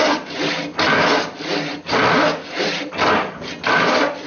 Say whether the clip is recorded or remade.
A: recorded